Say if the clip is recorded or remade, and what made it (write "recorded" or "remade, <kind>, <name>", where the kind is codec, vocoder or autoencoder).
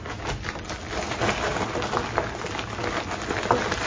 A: recorded